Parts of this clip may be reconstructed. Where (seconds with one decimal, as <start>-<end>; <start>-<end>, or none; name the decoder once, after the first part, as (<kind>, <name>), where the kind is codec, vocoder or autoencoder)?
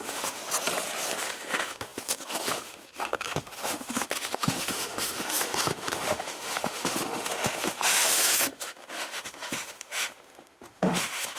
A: 0.0-0.4 (autoencoder, DAC-VAE); 1.2-11.4